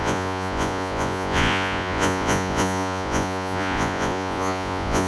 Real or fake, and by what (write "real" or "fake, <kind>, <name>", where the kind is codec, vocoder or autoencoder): fake, vocoder, Vocos